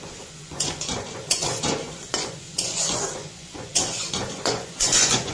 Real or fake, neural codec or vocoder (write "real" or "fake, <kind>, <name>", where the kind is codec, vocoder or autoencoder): fake, vocoder, Vocos